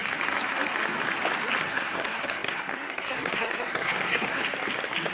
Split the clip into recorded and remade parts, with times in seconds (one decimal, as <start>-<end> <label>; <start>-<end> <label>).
0.0-1.6 recorded; 1.6-4.4 remade; 4.4-5.1 recorded